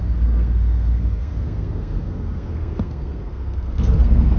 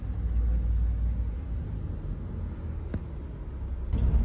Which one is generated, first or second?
first